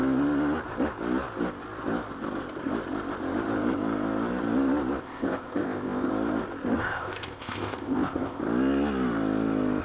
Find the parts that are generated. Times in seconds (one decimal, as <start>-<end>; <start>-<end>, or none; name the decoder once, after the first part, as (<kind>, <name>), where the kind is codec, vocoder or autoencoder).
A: 5.0-6.1 (codec, ZipCodec); 6.8-8.4